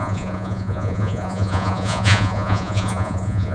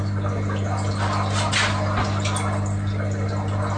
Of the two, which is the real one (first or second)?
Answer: second